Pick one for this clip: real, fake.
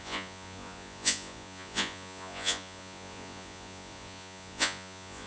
fake